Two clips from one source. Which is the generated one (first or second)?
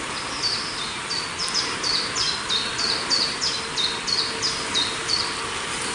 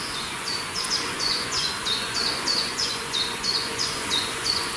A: second